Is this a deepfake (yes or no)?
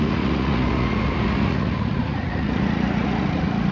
yes